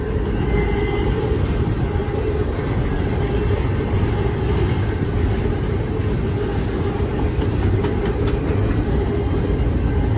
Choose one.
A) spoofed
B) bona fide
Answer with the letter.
B